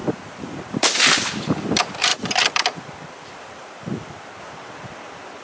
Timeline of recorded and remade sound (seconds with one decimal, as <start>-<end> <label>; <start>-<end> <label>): 0.0-5.4 remade